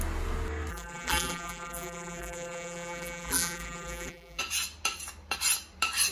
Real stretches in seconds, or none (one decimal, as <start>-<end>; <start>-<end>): 0.0-0.7; 4.4-6.1

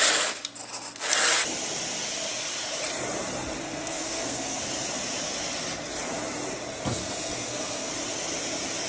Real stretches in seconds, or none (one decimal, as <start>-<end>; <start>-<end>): 0.0-3.6; 4.6-7.0; 7.9-8.9